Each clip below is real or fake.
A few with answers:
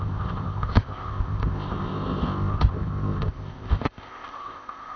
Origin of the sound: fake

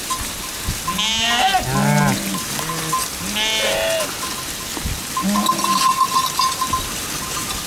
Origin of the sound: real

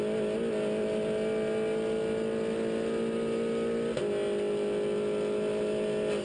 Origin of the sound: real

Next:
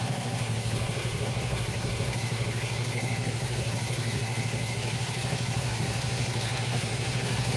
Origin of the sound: fake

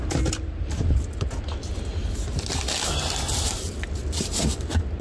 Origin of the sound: real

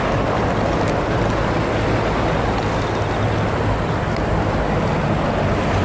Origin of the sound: real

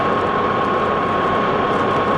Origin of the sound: real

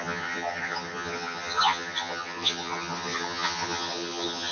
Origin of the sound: fake